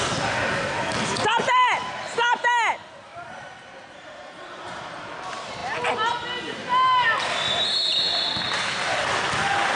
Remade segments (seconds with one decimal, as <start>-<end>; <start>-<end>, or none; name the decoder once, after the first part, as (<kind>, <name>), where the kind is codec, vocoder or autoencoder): 3.1-4.6 (vocoder, BigVGAN v2)